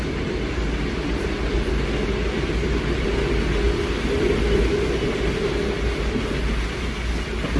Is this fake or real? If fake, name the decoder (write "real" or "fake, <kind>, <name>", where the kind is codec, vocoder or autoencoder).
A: real